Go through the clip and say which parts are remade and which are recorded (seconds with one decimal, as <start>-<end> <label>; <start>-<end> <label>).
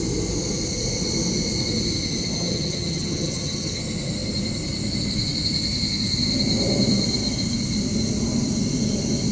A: 0.0-2.2 recorded; 2.2-3.8 remade; 3.8-9.3 recorded